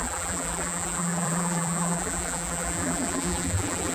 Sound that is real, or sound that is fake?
fake